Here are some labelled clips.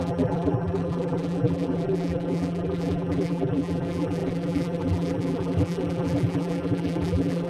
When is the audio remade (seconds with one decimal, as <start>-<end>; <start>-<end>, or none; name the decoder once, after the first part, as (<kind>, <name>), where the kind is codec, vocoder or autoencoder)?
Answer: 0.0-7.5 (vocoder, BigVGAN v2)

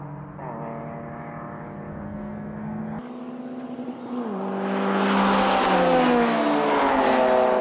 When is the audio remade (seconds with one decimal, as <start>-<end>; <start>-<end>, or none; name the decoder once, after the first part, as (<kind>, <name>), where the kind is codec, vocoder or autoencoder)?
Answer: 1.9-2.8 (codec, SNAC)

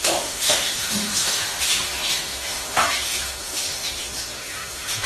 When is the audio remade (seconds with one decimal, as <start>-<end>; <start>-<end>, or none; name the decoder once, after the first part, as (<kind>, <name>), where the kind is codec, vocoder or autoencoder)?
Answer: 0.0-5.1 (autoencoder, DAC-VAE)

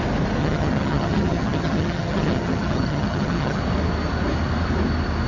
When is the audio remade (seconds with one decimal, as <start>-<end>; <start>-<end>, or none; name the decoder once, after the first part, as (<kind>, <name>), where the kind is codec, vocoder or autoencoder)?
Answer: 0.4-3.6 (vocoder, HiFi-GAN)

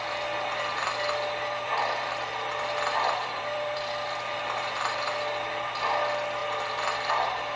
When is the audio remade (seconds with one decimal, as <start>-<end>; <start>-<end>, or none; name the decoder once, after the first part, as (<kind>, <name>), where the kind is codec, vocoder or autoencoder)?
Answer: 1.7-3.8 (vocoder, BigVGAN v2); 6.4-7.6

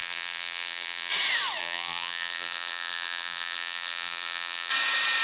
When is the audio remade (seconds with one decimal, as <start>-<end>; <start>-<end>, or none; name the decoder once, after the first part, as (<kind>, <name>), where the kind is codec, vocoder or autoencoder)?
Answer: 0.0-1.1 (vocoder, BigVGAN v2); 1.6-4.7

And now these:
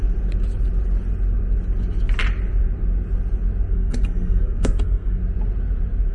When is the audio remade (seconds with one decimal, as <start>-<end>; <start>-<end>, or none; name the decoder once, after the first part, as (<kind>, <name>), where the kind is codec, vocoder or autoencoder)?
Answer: 3.7-5.2 (codec, SNAC)

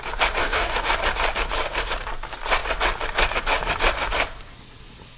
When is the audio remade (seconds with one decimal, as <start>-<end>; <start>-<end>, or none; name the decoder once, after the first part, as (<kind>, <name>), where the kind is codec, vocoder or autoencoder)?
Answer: 0.4-0.9 (codec, DAC)